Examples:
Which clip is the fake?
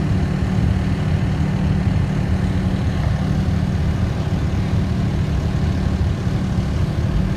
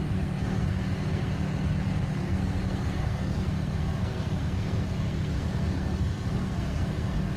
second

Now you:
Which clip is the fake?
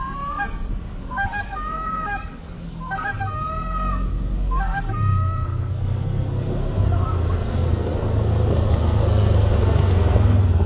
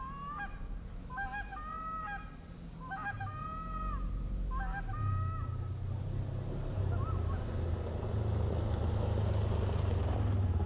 first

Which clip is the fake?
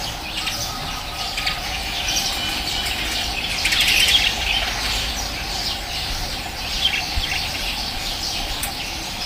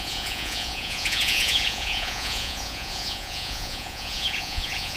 second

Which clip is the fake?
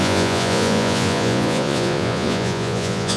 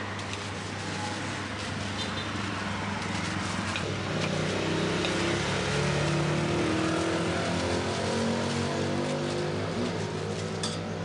first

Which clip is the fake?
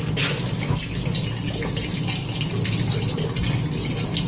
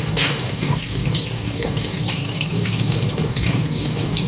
second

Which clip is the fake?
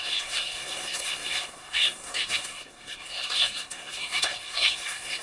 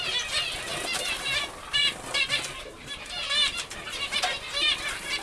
first